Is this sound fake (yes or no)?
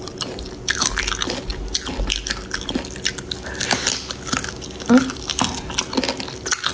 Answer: no